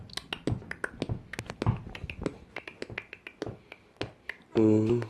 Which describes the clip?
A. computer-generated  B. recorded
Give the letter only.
B